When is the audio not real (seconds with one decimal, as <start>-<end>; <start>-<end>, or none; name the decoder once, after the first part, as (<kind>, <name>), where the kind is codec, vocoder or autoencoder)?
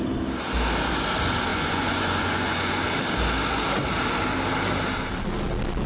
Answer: 1.5-2.8 (vocoder, Vocos)